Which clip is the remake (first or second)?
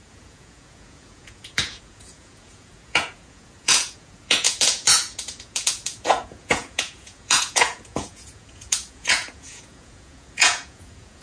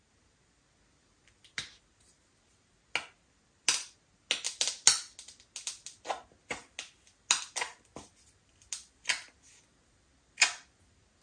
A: first